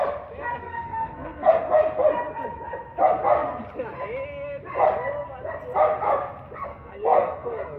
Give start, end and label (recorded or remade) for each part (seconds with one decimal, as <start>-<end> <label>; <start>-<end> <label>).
0.0-0.6 recorded; 0.6-1.5 remade; 1.5-6.7 recorded; 6.7-7.8 remade